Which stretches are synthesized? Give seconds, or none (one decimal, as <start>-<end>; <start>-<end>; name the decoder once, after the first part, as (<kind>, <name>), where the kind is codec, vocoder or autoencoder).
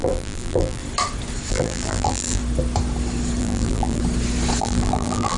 0.0-0.8 (vocoder, BigVGAN v2); 1.5-2.4; 3.4-4.0; 4.6-5.4